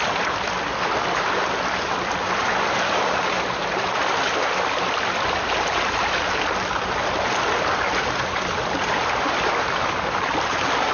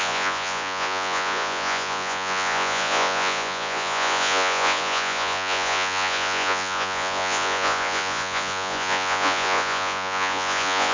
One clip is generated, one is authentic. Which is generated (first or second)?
second